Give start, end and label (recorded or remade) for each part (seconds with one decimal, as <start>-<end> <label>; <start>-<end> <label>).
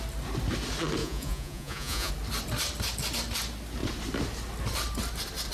0.0-1.0 recorded; 1.0-2.1 remade; 2.1-5.5 recorded